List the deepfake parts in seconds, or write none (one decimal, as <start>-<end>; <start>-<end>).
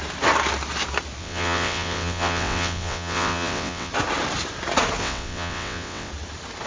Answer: 1.2-3.9; 5.0-6.1